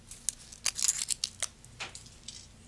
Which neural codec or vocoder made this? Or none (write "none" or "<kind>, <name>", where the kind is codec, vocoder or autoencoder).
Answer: none